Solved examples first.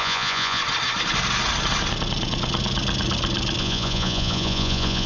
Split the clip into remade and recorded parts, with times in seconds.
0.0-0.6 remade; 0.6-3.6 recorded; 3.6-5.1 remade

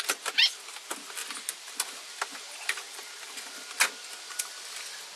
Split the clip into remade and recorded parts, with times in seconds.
0.0-5.2 recorded